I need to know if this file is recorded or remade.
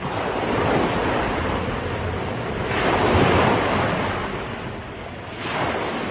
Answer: recorded